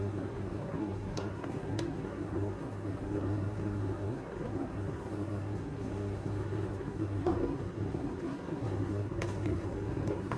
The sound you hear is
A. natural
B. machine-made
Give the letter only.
B